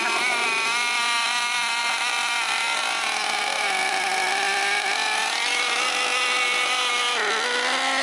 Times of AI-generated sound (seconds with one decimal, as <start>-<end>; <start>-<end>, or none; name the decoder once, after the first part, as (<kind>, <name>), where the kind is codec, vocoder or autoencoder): none